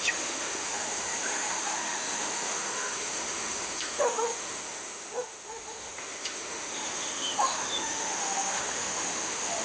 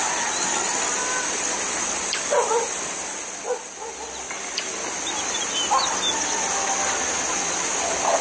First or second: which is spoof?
first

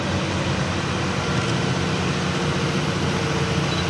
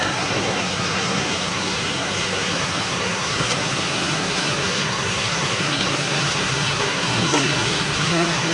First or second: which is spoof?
second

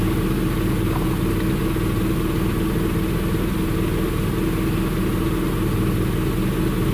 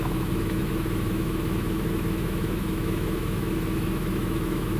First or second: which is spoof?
second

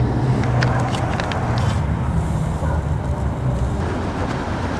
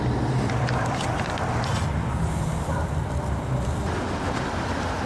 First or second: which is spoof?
second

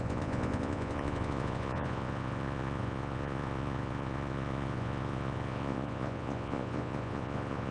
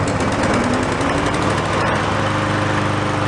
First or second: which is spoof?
first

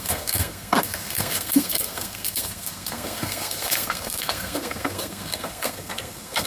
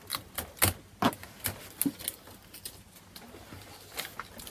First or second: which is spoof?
first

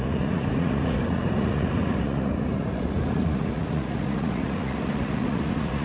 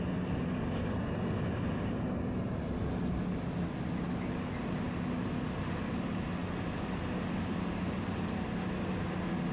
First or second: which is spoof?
first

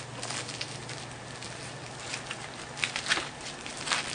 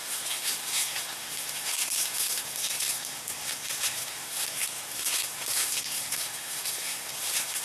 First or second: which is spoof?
second